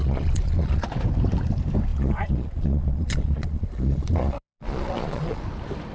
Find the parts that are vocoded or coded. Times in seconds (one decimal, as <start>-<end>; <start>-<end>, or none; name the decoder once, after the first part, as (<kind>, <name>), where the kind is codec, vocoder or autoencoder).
0.0-0.8 (vocoder, Vocos); 1.9-5.4